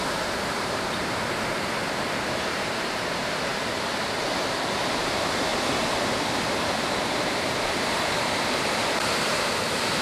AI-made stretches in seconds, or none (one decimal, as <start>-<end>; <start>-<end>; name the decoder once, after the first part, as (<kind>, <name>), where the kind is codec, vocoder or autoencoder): 0.0-10.0 (vocoder, BigVGAN v2)